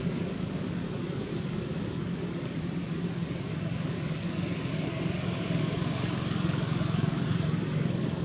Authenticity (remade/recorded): remade